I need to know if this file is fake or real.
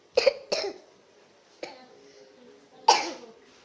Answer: real